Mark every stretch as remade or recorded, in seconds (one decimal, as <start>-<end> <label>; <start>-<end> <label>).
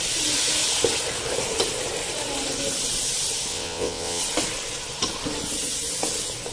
0.0-3.5 recorded; 3.5-4.2 remade; 4.2-6.5 recorded